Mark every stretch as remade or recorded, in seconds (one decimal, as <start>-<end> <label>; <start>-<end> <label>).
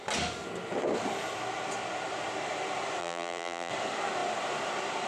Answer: 0.0-3.0 recorded; 3.0-3.7 remade; 3.7-5.1 recorded